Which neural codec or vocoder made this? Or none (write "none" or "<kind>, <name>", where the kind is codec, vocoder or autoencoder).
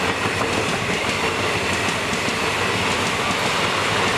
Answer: none